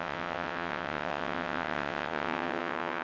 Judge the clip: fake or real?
fake